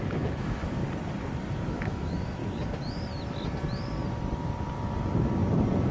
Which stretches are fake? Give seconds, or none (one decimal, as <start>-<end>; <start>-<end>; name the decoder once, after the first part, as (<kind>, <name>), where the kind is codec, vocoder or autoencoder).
0.0-0.8 (autoencoder, DAC-VAE); 1.7-2.4

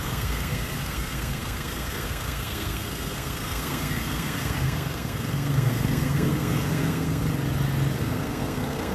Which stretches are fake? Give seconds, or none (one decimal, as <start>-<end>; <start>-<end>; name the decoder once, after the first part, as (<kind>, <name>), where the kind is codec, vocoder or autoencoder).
0.0-7.2 (codec, SNAC); 8.0-8.9

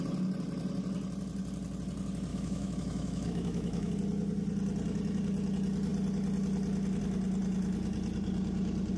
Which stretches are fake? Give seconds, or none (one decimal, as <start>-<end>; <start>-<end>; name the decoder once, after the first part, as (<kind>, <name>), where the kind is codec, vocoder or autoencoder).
2.3-3.9 (autoencoder, DAC-VAE)